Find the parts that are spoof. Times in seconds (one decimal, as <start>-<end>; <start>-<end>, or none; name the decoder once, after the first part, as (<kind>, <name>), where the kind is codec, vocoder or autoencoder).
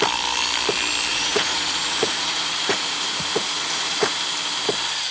1.1-4.2 (vocoder, Vocos)